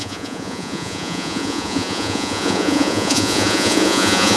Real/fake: fake